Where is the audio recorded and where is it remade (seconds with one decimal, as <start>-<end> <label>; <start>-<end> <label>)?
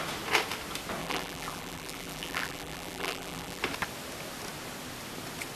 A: 0.0-1.0 recorded; 1.0-3.6 remade; 3.6-5.6 recorded